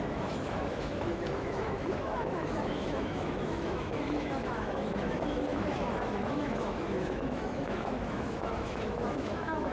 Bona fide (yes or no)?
no